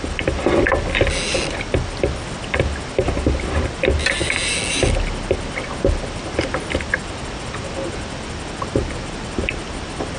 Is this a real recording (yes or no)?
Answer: yes